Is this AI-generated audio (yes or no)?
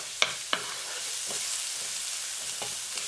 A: no